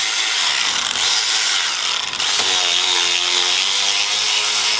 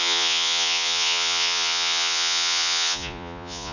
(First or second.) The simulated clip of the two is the second